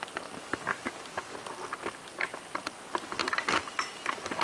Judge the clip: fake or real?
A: real